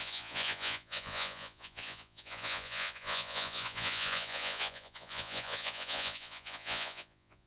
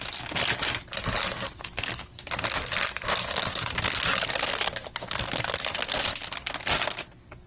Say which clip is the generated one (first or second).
first